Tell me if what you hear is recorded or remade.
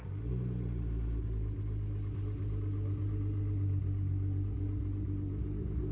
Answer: recorded